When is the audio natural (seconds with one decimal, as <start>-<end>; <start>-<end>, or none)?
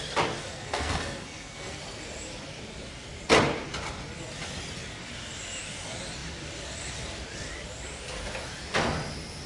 0.0-0.4; 1.8-9.5